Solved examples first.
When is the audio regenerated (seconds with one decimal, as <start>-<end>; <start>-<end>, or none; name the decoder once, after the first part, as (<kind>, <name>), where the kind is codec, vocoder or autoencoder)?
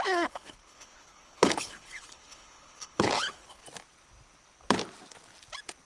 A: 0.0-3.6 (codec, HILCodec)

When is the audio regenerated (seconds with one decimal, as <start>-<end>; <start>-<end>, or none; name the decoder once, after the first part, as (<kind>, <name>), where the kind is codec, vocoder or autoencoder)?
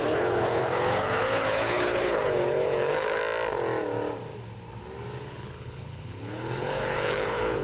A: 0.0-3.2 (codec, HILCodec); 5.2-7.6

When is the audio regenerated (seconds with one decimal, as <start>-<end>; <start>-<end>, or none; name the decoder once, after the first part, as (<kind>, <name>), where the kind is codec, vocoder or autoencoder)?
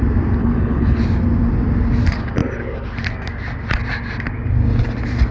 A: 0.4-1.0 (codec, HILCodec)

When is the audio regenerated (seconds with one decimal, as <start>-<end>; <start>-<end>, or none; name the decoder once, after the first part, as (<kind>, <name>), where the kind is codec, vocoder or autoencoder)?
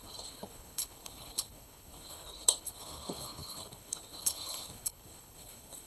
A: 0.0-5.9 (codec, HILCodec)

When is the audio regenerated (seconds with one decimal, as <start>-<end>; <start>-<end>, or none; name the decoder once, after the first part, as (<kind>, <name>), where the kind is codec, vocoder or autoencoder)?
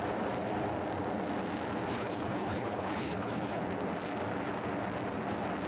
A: 1.9-3.6 (codec, HILCodec)